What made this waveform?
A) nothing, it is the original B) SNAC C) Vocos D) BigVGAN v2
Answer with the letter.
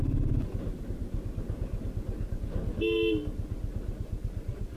A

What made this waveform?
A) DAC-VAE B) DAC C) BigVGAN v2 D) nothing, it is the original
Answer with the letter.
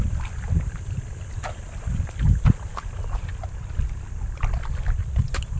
D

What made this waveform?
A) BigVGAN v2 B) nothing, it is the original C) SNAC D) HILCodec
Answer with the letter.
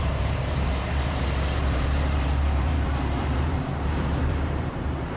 A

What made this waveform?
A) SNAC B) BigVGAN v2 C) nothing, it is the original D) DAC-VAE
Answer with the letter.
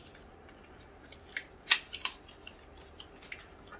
B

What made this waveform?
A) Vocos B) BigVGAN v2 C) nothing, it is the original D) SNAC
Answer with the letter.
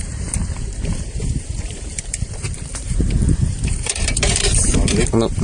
B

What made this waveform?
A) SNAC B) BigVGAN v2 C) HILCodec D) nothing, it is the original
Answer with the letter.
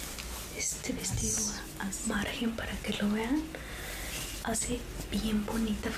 D